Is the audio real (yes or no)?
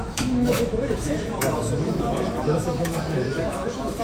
no